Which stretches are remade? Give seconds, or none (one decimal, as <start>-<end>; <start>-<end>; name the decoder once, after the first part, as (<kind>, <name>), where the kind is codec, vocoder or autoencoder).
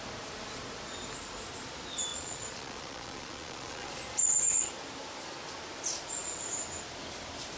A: 2.1-3.9 (vocoder, Vocos)